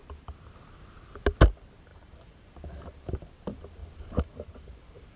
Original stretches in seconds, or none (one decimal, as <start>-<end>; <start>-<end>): 0.0-1.9; 3.3-3.8

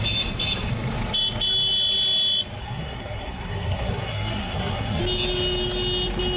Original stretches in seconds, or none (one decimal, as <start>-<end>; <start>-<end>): 0.0-2.6; 5.0-6.4

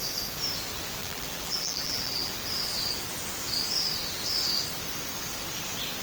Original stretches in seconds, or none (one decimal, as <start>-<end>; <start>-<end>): 0.0-1.0; 2.3-6.0

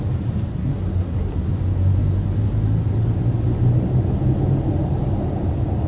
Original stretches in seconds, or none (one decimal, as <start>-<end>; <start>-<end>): 0.0-0.5; 1.5-5.9

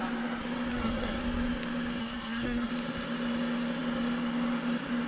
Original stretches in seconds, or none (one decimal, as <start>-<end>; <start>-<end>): 0.0-0.7; 1.2-2.0; 2.7-5.1